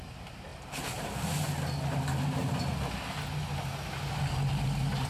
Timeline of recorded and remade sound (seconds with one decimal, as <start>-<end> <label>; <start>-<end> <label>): 0.0-5.1 recorded